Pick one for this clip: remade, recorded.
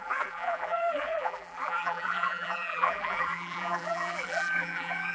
remade